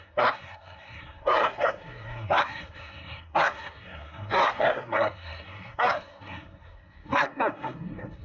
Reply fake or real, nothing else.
fake